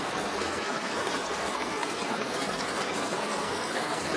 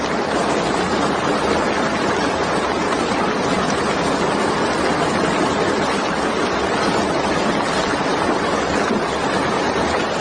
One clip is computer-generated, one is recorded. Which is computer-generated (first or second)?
first